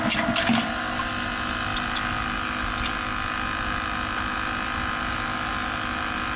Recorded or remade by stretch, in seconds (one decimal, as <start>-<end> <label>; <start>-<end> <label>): 0.0-6.4 recorded